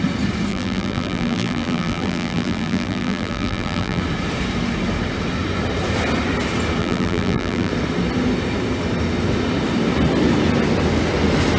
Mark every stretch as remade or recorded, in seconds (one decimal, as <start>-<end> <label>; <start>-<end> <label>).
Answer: 0.0-0.5 recorded; 0.5-4.0 remade; 4.0-6.8 recorded; 6.8-7.7 remade; 7.7-11.6 recorded